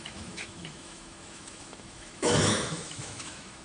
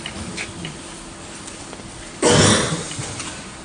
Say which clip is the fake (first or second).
first